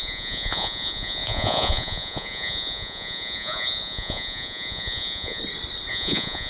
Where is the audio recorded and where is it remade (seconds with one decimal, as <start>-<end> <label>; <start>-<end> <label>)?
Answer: 0.0-5.4 remade; 5.4-5.9 recorded; 5.9-6.5 remade